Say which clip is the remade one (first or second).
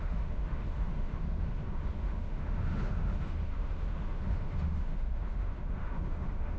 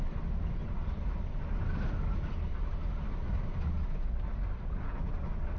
first